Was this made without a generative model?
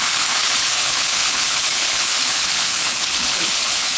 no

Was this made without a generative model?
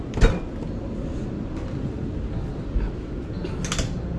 yes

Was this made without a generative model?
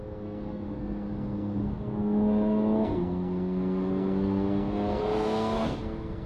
no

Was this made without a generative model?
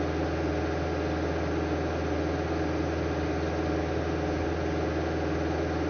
yes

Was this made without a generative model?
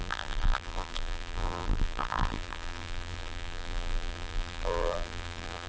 no